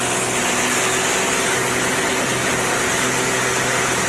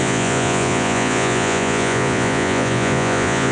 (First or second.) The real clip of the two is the first